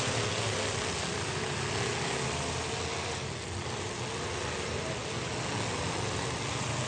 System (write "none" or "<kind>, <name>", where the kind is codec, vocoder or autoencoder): none